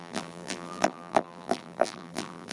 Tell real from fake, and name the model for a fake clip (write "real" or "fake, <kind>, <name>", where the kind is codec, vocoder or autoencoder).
fake, vocoder, BigVGAN v2